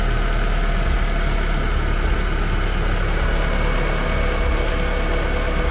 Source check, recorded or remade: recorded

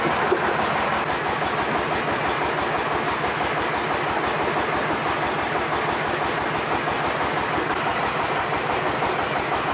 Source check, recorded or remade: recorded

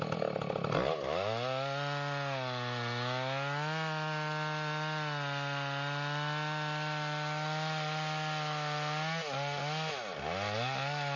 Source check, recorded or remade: recorded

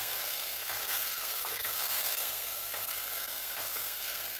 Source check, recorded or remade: remade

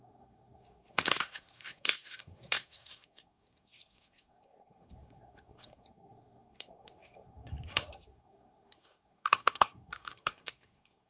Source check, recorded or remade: remade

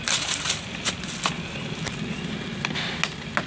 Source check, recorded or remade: recorded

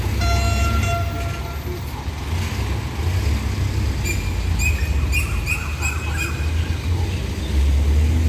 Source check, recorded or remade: recorded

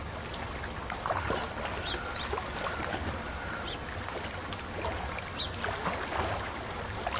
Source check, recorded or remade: recorded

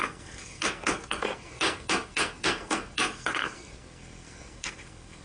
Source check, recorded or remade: remade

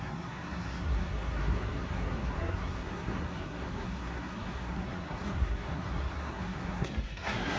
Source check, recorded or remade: remade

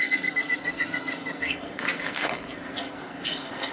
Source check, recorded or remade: remade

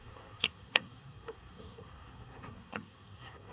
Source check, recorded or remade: remade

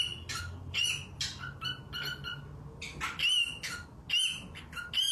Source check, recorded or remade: recorded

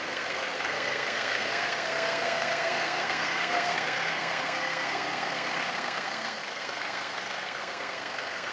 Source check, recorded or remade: remade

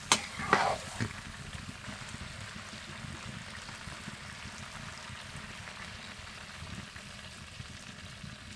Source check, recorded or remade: recorded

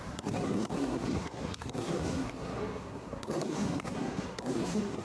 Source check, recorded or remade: remade